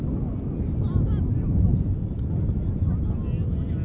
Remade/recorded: recorded